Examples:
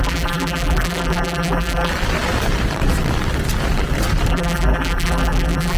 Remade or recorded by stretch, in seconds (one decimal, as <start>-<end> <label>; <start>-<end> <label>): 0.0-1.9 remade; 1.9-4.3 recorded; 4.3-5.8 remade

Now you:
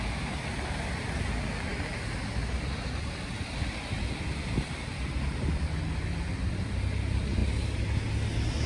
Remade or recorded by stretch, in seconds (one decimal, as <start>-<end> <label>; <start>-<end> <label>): 0.0-8.7 recorded

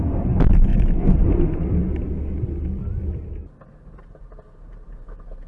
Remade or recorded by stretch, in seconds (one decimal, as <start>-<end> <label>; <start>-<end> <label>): 0.0-0.7 remade; 0.7-4.0 recorded; 4.0-5.5 remade

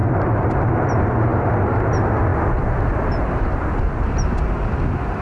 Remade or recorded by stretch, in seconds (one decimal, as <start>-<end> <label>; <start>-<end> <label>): 0.0-0.7 remade; 0.7-1.3 recorded; 1.3-1.9 remade; 1.9-2.3 recorded; 2.3-3.8 remade; 3.8-5.2 recorded